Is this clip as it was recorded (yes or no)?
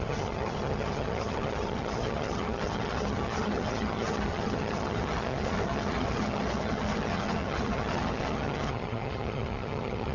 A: no